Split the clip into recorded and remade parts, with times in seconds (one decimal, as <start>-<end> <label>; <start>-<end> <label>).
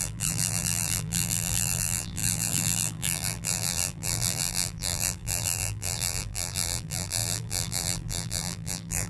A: 0.0-9.1 remade